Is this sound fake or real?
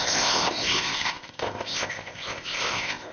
fake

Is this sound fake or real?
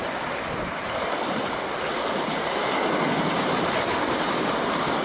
real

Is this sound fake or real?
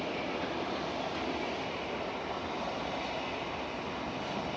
real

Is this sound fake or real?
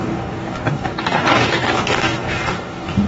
fake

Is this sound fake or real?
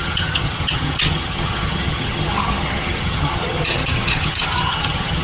fake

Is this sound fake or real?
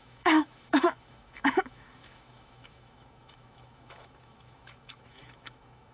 fake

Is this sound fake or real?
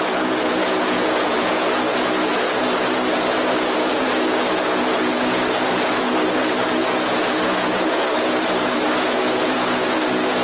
fake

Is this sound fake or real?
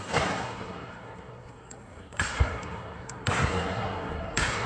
fake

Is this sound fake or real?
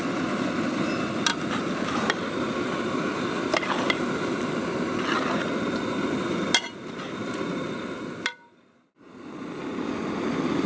real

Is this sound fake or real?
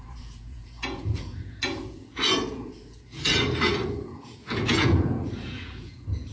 fake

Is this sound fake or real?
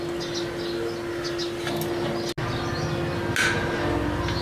real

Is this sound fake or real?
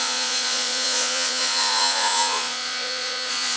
fake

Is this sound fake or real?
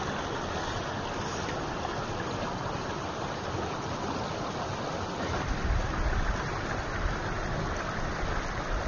real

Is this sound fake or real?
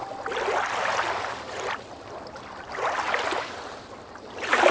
real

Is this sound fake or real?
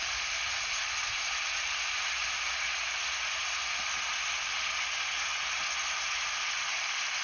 real